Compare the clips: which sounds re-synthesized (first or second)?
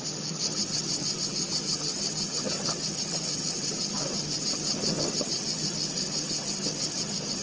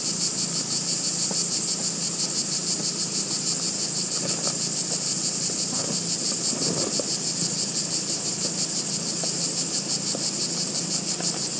first